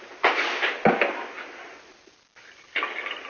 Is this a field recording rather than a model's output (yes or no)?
yes